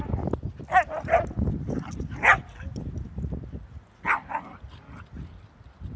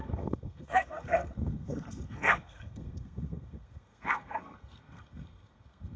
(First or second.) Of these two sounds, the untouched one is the first